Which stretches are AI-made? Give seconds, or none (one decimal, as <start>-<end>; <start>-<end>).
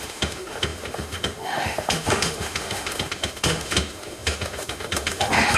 0.0-5.6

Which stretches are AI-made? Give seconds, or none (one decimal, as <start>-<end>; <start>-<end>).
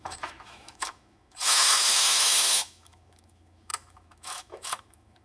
0.0-5.2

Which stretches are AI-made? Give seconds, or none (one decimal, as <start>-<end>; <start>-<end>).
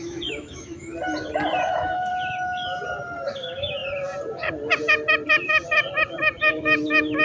0.0-0.9; 1.7-2.1; 3.3-3.8; 6.4-7.2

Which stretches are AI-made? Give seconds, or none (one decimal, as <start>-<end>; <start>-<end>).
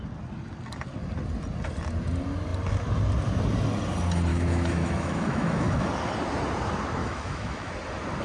4.3-5.9; 7.0-7.7